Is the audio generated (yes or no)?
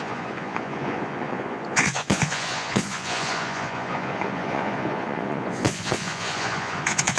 yes